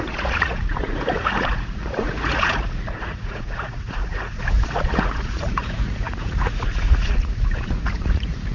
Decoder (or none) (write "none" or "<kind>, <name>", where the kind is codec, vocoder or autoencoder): vocoder, Vocos